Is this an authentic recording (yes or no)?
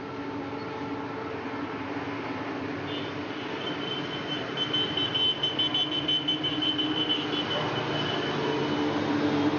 yes